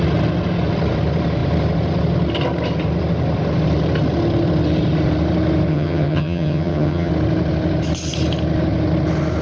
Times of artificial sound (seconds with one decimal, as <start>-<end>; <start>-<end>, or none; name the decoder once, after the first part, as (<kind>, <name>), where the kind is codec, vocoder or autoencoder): 5.7-7.1 (vocoder, HiFi-GAN)